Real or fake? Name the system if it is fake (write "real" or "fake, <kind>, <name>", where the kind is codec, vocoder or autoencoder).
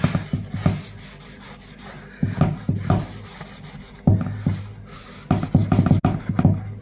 real